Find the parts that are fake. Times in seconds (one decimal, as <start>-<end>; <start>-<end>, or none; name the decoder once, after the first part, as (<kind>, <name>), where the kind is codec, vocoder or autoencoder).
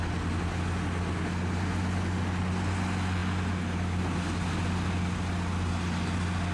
none